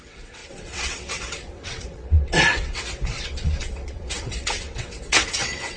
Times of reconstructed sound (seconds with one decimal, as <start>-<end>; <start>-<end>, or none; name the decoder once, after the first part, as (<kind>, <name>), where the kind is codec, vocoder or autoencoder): 0.0-5.8 (vocoder, WaveNeXt)